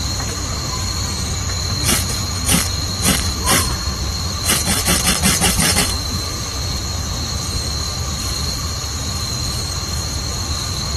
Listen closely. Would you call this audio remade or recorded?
recorded